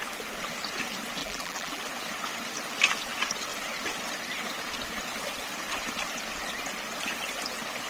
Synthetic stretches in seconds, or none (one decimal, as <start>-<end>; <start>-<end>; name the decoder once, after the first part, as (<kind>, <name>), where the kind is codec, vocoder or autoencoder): 1.2-1.8 (vocoder, BigVGAN v2)